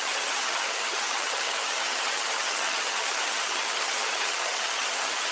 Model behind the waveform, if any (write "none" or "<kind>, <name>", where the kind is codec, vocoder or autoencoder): vocoder, HiFi-GAN